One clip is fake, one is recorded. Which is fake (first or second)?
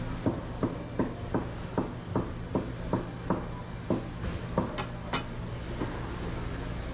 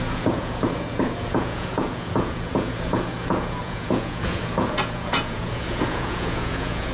second